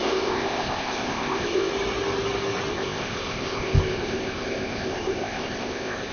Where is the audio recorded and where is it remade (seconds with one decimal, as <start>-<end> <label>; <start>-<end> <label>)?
0.0-1.7 remade; 1.7-2.7 recorded; 2.7-6.1 remade